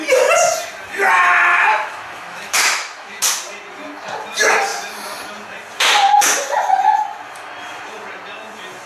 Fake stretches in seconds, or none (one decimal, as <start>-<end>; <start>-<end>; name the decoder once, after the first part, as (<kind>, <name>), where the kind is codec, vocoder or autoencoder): 1.5-3.2 (autoencoder, DAC-VAE)